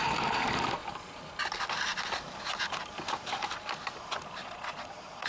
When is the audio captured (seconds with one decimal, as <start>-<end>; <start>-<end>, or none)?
0.0-4.4